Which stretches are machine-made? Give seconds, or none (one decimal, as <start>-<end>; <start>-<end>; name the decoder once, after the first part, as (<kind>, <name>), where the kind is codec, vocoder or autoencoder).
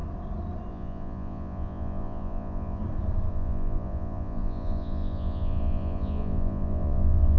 0.7-2.8 (vocoder, Vocos); 3.3-7.4